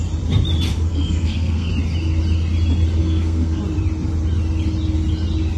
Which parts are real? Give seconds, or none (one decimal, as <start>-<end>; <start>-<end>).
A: 0.0-0.7; 1.7-3.0; 3.6-5.6